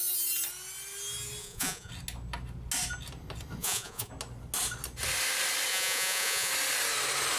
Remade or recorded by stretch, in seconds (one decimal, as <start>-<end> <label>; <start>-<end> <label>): 0.0-1.4 recorded; 1.4-1.9 remade; 1.9-3.6 recorded; 3.6-4.1 remade; 4.1-5.7 recorded; 5.7-6.5 remade; 6.5-7.4 recorded